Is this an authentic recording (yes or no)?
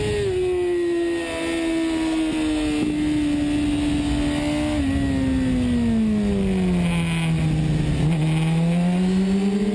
yes